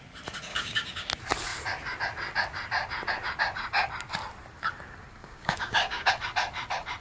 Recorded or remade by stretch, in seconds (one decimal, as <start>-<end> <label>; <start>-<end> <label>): 0.0-0.5 recorded; 0.5-1.1 remade; 1.1-5.2 recorded; 5.2-6.1 remade; 6.1-7.0 recorded